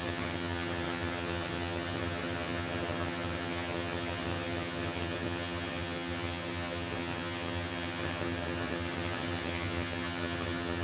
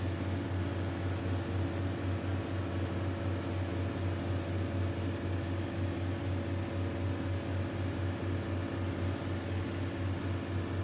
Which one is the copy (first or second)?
first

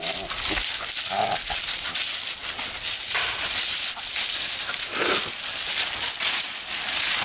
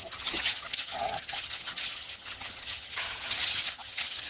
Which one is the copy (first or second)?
second